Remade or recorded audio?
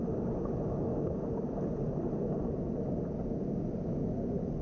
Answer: recorded